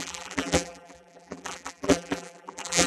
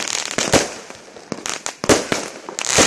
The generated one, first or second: first